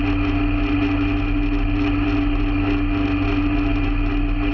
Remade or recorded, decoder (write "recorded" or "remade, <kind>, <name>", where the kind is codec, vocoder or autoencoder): recorded